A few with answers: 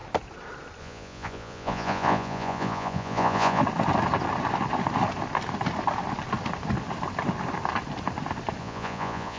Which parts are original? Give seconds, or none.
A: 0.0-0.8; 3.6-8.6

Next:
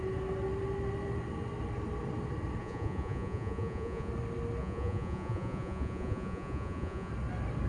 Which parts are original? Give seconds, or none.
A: 0.0-2.6; 4.1-4.6; 7.1-7.7

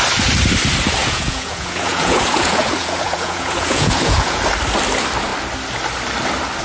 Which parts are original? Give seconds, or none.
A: 0.0-1.0; 4.4-6.6

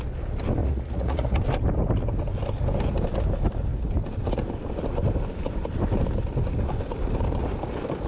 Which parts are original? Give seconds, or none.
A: 0.0-0.6; 1.4-8.1

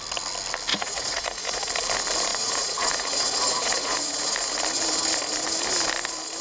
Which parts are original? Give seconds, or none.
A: 0.0-0.7; 1.7-2.3; 4.2-6.4

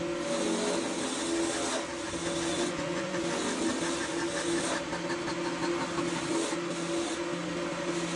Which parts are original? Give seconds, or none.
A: 0.0-2.5; 3.2-8.2

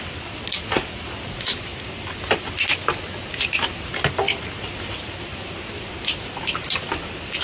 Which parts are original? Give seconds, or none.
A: 0.0-7.4

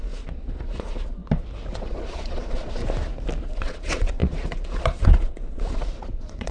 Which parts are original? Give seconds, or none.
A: 1.2-1.7; 2.8-3.4